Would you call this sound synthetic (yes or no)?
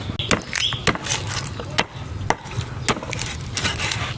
no